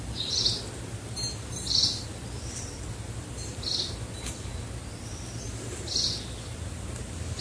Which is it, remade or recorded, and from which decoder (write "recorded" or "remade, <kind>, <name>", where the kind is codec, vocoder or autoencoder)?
recorded